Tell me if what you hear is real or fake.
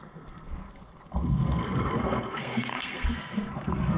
fake